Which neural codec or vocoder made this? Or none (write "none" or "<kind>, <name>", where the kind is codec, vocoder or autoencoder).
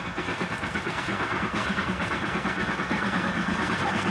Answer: codec, SNAC